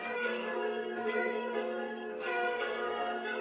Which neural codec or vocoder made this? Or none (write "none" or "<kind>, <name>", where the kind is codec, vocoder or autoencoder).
codec, SNAC